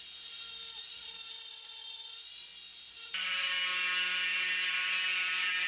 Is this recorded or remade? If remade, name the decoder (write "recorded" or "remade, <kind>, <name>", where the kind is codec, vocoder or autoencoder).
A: recorded